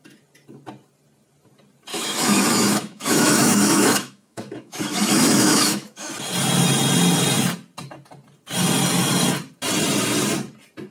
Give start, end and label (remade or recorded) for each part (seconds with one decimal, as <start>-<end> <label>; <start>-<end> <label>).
0.0-1.9 recorded; 1.9-6.1 remade; 6.1-10.9 recorded